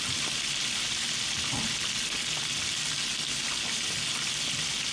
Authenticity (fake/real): real